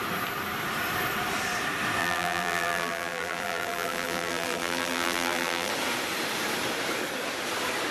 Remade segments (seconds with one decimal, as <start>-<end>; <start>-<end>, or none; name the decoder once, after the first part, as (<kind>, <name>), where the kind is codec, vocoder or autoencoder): 2.0-5.7 (vocoder, BigVGAN v2)